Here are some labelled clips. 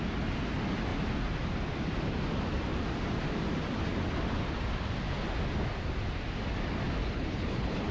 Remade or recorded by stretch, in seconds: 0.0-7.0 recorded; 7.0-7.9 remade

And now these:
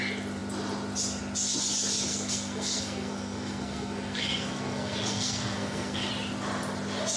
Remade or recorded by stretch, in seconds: 0.0-2.1 recorded; 2.1-6.1 remade; 6.1-7.2 recorded